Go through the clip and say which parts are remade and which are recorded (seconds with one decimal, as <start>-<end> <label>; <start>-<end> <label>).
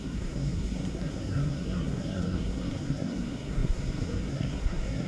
0.0-5.1 remade